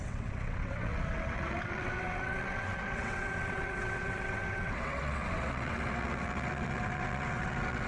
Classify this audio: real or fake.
fake